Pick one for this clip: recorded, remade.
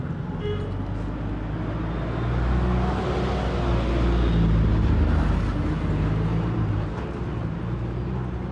recorded